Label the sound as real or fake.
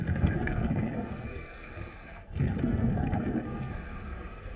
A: fake